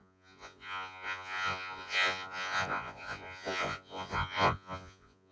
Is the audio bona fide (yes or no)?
no